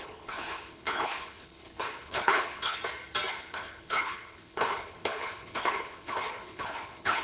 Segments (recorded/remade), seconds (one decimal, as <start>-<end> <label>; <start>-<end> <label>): 0.0-2.8 remade; 2.8-3.3 recorded; 3.3-7.2 remade